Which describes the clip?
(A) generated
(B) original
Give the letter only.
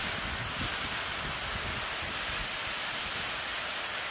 B